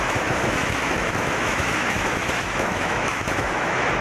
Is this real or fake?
fake